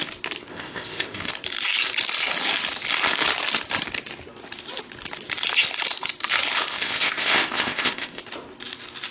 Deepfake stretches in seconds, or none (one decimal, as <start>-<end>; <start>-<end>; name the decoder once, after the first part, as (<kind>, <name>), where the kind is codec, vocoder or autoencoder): 0.5-1.3 (codec, ZipCodec); 6.7-8.2